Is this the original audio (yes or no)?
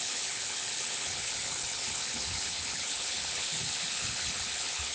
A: no